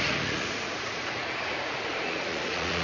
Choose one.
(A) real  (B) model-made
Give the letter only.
B